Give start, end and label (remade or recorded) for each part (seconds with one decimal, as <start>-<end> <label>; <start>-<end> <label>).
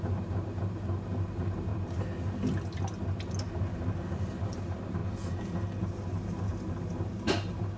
0.0-1.7 remade; 1.7-4.5 recorded; 4.5-5.0 remade; 5.0-5.8 recorded; 5.8-6.5 remade; 6.5-7.0 recorded; 7.0-7.8 remade